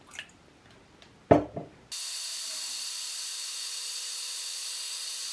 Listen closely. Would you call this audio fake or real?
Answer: real